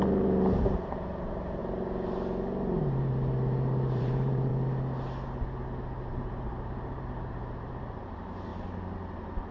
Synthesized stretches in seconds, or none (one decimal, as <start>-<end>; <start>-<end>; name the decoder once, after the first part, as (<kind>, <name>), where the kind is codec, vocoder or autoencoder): 0.0-1.6 (vocoder, BigVGAN v2); 3.1-4.5; 6.0-8.5